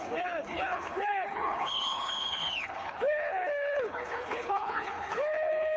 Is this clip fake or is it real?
fake